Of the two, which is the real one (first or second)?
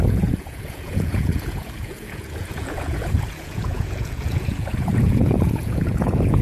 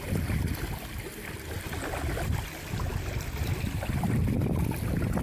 second